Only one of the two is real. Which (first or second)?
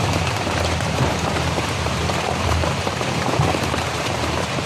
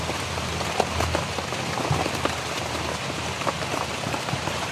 second